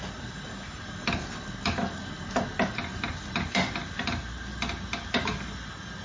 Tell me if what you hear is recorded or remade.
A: recorded